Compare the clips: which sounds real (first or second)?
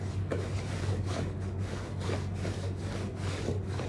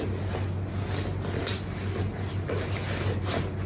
second